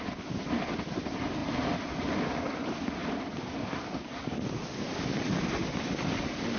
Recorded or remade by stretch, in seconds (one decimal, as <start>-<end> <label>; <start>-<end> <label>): 0.0-6.6 recorded